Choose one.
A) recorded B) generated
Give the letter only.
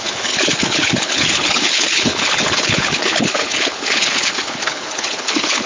B